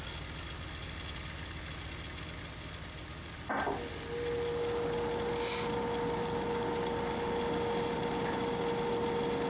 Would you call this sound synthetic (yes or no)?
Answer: no